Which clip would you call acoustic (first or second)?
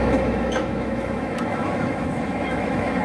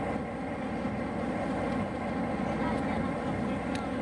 second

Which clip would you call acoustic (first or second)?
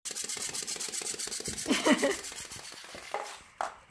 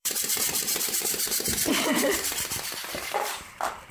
first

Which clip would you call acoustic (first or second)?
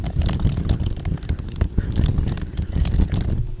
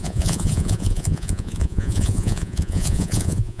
first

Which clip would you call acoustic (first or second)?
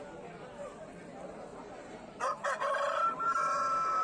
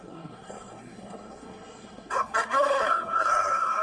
first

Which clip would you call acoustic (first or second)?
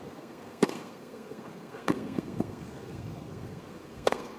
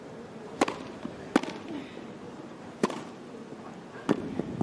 second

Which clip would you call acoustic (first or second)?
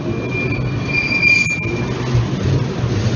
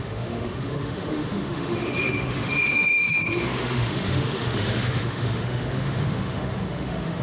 first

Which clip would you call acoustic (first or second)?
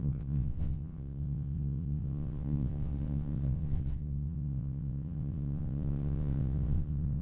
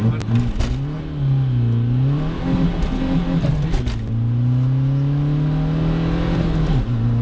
second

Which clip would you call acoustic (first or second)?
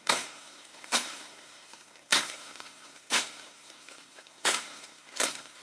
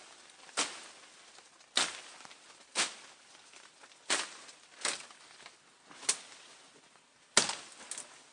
second